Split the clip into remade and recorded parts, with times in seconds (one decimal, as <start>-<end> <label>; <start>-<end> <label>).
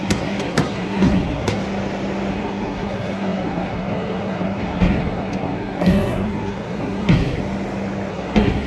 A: 0.0-1.6 remade; 1.6-2.3 recorded; 2.3-7.4 remade; 7.4-8.1 recorded; 8.1-8.7 remade